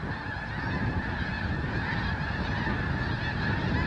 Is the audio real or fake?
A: real